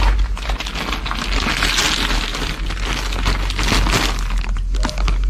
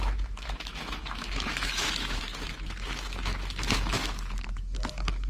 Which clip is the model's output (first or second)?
second